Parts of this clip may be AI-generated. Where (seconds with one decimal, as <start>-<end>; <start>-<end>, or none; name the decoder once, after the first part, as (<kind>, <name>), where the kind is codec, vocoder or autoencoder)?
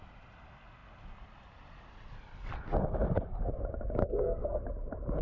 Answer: 4.0-4.6 (codec, SNAC)